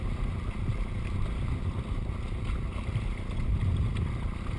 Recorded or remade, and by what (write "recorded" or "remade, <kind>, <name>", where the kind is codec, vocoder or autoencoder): recorded